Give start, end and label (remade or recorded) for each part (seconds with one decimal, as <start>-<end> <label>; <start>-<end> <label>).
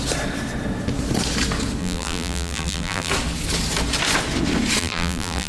0.0-1.8 recorded; 1.8-3.1 remade; 3.1-4.8 recorded; 4.8-5.5 remade